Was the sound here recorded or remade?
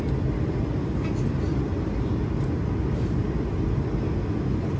recorded